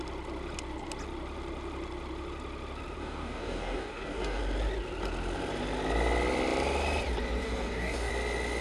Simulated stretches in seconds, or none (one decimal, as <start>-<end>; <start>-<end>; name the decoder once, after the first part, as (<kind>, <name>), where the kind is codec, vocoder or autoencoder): 3.0-4.4 (codec, DAC); 7.4-8.1